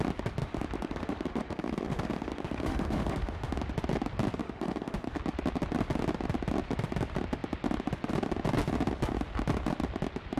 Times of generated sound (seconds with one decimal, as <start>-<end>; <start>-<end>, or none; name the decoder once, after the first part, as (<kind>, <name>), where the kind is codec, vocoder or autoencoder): 0.4-3.7 (autoencoder, DAC-VAE); 4.4-5.2